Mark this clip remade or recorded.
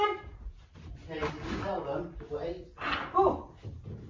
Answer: recorded